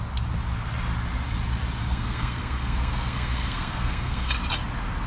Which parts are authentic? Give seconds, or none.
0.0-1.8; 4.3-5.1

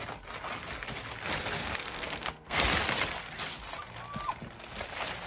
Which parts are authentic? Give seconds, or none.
0.0-1.6; 2.6-5.3